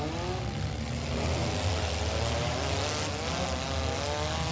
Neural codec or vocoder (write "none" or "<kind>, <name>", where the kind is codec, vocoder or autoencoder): none